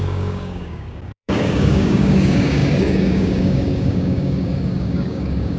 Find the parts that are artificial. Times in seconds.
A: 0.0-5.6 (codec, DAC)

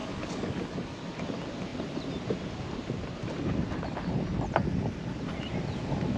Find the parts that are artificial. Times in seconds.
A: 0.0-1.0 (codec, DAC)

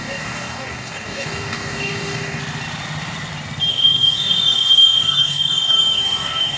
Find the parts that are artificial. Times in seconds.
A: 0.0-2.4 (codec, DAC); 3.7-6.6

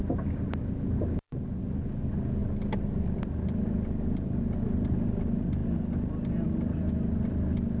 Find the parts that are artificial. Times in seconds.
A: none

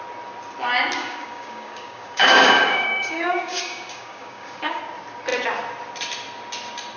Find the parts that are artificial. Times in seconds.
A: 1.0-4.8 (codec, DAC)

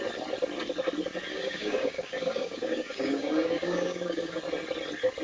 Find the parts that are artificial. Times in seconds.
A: 1.3-4.4 (codec, DAC)

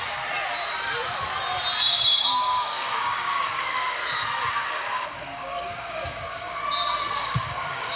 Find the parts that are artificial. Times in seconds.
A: 1.8-4.0 (codec, DAC); 4.5-6.6; 7.2-8.0

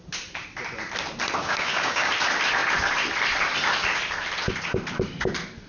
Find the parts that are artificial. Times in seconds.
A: 1.4-2.1 (codec, DAC)